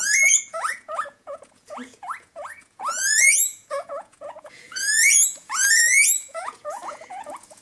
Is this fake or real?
fake